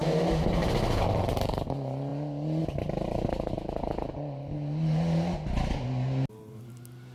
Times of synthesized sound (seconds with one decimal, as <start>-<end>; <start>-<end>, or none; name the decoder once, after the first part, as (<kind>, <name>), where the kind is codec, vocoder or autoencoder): none